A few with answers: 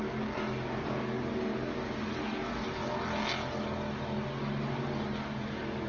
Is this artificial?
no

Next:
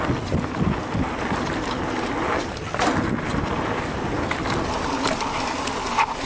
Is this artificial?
no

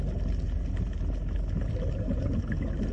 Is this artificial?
no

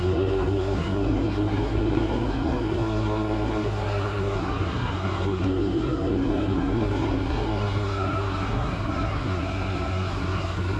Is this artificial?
yes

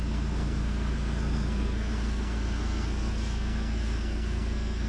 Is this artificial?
yes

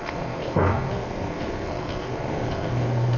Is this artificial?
yes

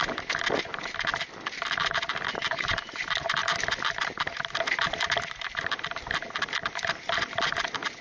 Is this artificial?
no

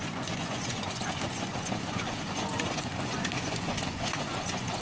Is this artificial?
yes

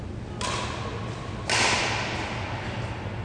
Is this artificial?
no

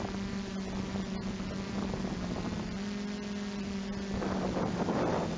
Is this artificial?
no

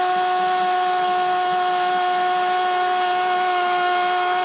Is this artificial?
yes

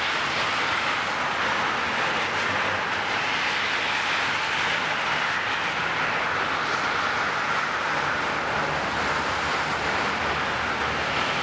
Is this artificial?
no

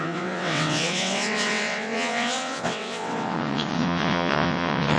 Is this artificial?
yes